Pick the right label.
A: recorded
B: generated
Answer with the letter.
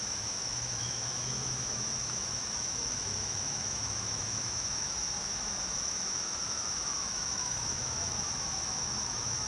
B